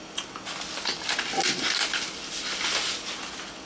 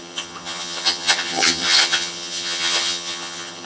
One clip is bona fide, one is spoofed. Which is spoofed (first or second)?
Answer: second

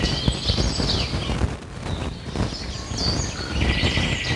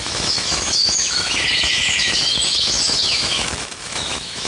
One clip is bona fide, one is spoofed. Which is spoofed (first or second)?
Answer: second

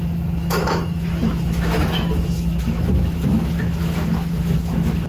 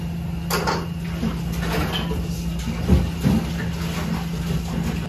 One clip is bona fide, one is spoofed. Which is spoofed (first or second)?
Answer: first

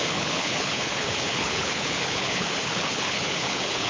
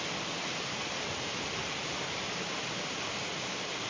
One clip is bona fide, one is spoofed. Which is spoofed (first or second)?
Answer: first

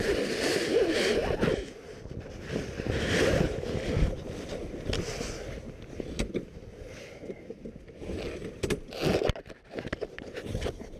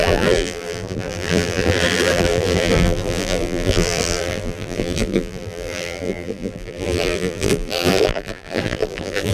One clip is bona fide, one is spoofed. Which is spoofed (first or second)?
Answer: second